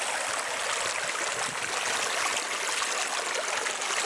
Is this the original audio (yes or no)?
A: yes